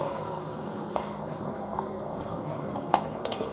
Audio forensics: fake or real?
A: fake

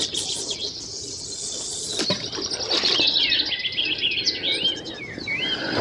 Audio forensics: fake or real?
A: real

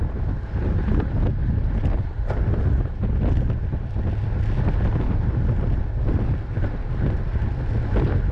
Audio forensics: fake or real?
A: real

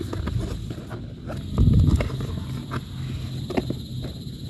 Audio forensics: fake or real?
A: real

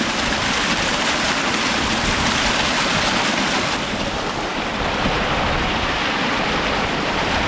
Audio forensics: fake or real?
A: real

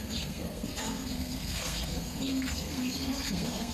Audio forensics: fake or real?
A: fake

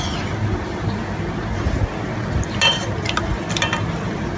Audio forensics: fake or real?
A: real